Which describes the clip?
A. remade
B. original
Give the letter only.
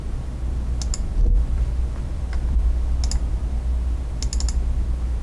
B